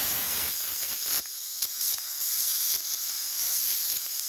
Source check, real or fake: fake